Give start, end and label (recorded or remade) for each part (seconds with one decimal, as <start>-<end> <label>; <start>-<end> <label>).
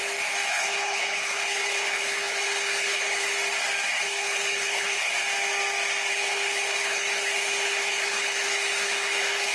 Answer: 0.0-0.5 recorded; 0.5-3.3 remade; 3.3-3.9 recorded; 3.9-5.1 remade; 5.1-6.1 recorded; 6.1-9.5 remade